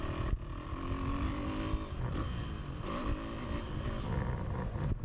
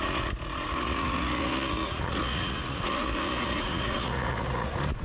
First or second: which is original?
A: first